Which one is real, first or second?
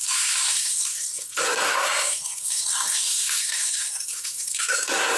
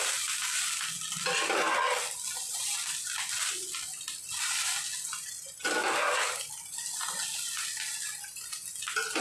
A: second